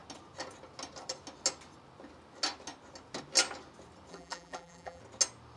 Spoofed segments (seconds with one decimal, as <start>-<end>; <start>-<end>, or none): 4.1-5.0